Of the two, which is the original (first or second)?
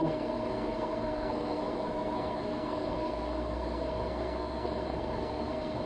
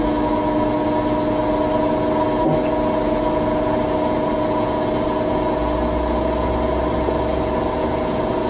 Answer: second